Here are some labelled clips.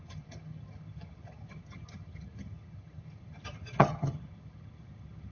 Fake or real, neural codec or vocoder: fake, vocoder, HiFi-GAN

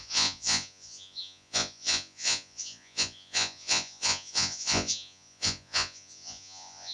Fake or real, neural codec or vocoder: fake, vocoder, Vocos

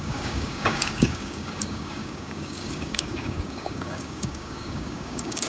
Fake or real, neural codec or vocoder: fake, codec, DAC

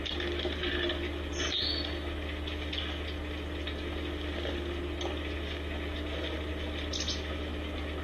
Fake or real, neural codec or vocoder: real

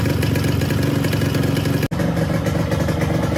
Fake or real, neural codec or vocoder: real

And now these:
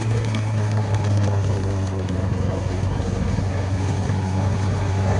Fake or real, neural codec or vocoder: fake, codec, SNAC